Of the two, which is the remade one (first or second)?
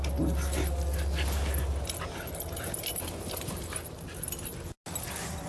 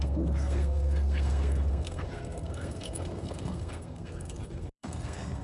second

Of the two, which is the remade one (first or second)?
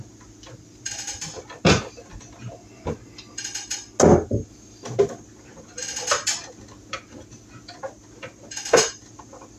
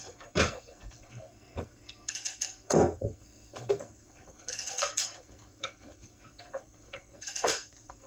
second